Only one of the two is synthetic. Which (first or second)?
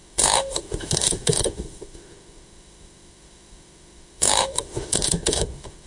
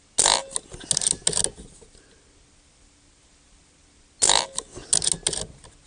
first